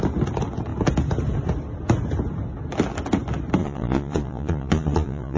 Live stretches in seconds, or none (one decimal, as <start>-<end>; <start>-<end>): 0.0-3.6